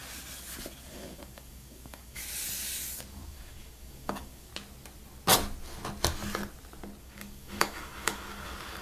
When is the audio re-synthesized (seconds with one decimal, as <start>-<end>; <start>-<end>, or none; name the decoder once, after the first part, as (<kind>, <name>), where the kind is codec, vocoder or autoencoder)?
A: 0.9-2.2 (codec, DAC); 3.1-4.5; 7.0-8.8